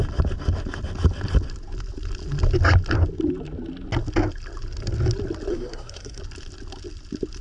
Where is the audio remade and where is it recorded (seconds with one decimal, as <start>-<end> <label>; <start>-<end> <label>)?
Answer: 0.0-5.5 recorded; 5.5-6.2 remade; 6.2-7.4 recorded